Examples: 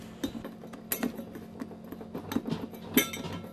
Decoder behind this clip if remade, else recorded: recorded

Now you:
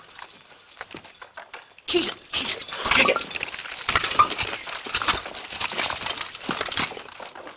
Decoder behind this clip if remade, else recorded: recorded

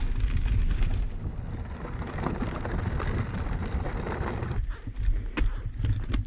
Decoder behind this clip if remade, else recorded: recorded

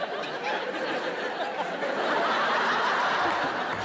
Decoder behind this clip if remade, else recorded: recorded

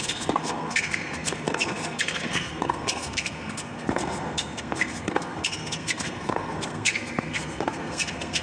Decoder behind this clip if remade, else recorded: remade, codec, SNAC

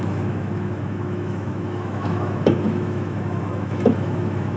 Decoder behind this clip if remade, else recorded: remade, autoencoder, DAC-VAE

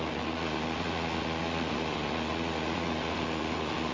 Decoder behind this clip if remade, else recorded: remade, vocoder, Vocos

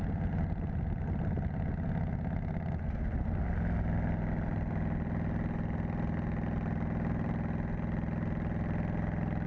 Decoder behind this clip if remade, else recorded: recorded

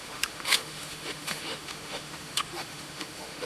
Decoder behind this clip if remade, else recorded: remade, autoencoder, DAC-VAE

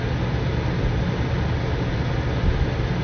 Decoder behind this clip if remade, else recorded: recorded